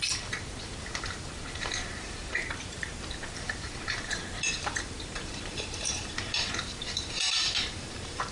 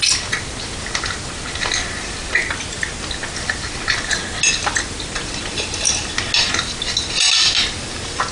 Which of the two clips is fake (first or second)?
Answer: first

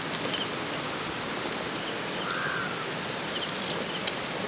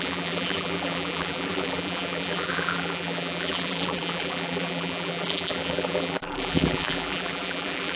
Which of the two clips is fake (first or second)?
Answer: second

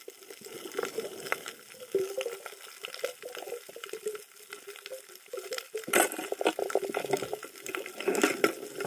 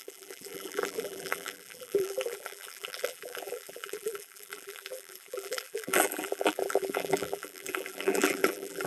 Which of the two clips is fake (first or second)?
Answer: second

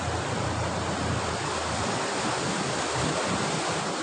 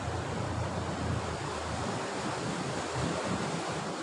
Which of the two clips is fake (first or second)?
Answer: second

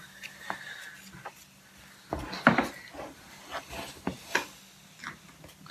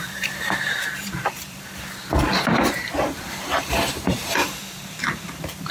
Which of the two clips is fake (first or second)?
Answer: second